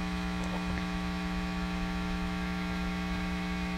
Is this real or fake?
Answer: fake